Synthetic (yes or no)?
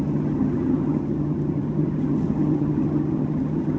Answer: yes